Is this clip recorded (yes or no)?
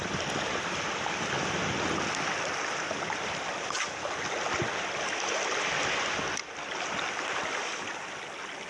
yes